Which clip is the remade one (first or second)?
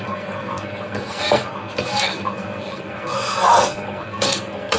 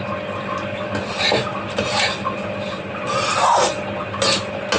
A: first